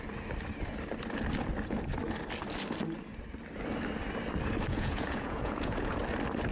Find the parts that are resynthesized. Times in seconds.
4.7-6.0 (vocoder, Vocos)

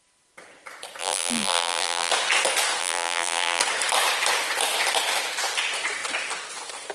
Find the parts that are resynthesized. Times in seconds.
1.0-2.1 (vocoder, BigVGAN v2); 2.8-3.6

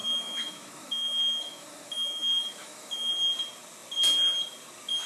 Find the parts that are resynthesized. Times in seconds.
0.0-3.1 (autoencoder, DAC-VAE)

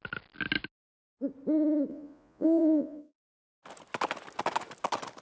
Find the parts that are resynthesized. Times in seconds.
1.9-3.3 (vocoder, Vocos)

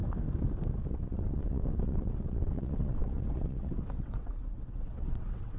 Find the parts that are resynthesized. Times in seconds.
0.9-5.6 (vocoder, WaveNeXt)

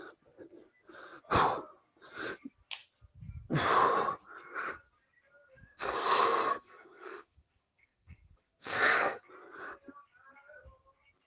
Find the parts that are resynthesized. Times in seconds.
5.5-9.3 (codec, SNAC)

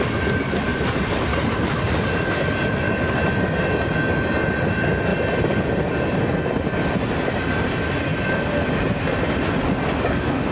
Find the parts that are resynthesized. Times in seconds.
0.7-3.3 (vocoder, BigVGAN v2); 5.1-6.2; 8.1-9.7

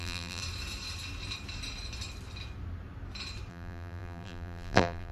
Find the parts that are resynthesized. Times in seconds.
0.0-0.4 (vocoder, BigVGAN v2); 3.5-5.1